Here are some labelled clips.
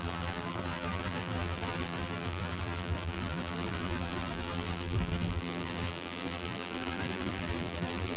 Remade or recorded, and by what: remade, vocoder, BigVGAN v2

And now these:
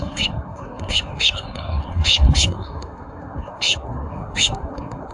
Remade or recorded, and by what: remade, codec, SNAC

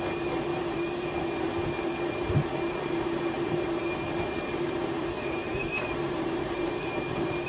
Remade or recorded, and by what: remade, vocoder, BigVGAN v2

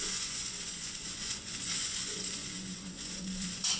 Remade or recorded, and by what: remade, vocoder, Vocos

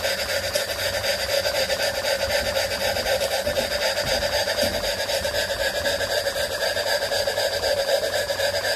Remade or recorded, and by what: recorded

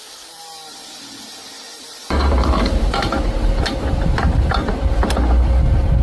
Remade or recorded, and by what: remade, vocoder, BigVGAN v2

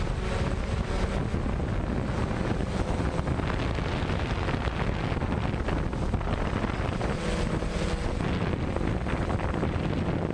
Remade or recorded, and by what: recorded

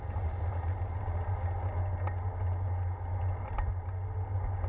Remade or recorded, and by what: recorded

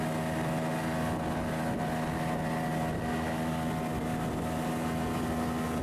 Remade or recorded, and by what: recorded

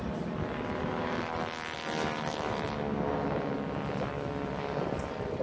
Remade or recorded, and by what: recorded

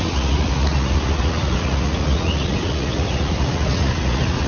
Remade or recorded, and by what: remade, vocoder, Vocos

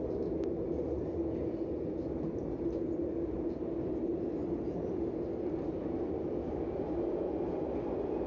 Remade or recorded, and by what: recorded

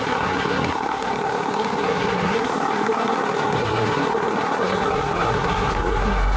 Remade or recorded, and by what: remade, codec, SNAC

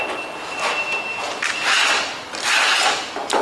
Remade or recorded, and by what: recorded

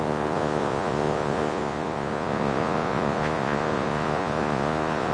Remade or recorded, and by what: remade, vocoder, Vocos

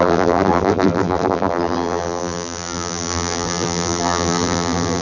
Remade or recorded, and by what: remade, vocoder, BigVGAN v2